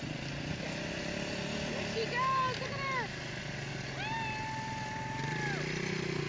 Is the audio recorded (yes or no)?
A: yes